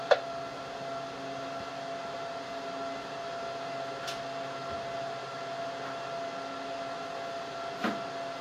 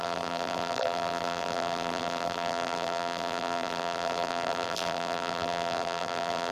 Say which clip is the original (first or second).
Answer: first